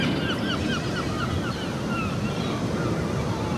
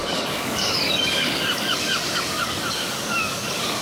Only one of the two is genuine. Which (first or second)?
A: first